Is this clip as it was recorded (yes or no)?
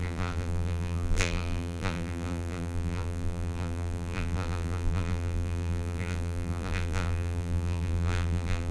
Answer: no